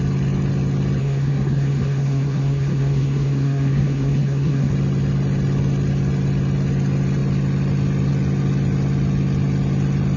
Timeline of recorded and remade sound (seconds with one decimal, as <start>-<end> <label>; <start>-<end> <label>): 0.0-1.0 recorded; 1.0-4.7 remade; 4.7-10.2 recorded